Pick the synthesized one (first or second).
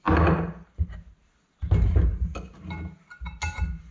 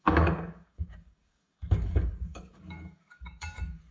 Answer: second